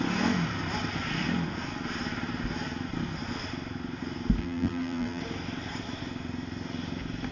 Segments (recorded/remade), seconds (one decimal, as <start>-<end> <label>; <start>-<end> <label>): 0.0-4.4 recorded; 4.4-5.2 remade; 5.2-7.3 recorded